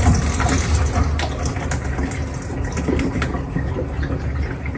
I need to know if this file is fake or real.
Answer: real